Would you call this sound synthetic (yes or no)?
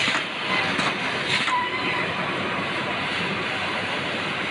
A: no